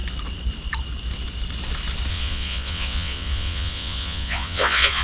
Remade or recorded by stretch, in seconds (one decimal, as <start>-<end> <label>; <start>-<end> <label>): 0.0-2.1 recorded; 2.1-5.0 remade